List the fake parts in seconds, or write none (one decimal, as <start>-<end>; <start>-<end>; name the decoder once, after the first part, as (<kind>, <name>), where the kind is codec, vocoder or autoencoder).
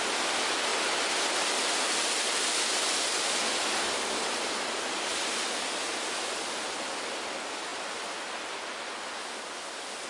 none